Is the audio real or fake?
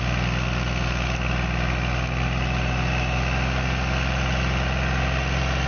real